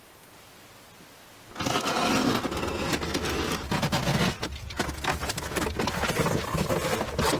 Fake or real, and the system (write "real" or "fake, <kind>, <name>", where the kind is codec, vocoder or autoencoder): real